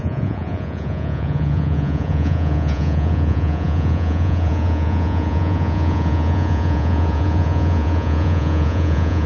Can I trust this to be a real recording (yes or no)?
no